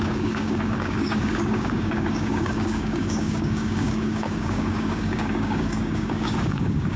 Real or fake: fake